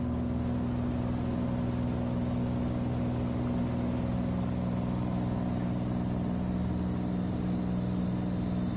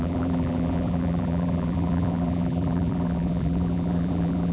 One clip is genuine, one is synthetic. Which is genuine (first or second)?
first